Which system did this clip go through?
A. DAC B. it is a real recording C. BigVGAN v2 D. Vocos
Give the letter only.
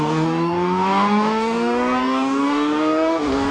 A